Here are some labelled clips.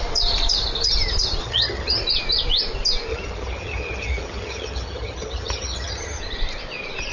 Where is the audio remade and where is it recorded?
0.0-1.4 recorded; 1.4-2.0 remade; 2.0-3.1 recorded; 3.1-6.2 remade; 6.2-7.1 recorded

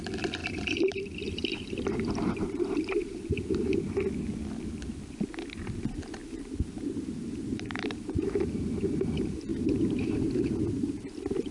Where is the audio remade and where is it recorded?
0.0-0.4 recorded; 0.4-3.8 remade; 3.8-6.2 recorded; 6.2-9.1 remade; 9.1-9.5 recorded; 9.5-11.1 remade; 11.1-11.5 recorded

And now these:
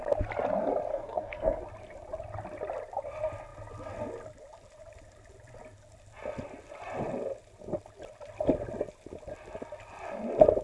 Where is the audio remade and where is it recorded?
0.0-0.9 recorded; 0.9-1.6 remade; 1.6-10.6 recorded

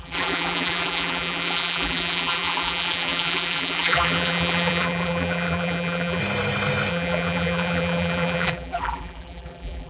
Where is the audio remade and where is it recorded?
0.0-6.2 remade; 6.2-6.9 recorded; 6.9-9.9 remade

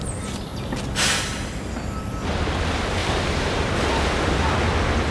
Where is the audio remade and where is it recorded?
0.0-3.0 recorded; 3.0-3.7 remade; 3.7-5.1 recorded